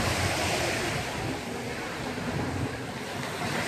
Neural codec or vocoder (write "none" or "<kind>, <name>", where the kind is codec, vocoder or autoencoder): none